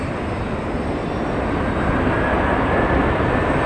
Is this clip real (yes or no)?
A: yes